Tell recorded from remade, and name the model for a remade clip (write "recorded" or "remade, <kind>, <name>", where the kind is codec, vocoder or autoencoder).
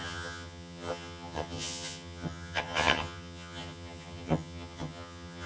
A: remade, vocoder, HiFi-GAN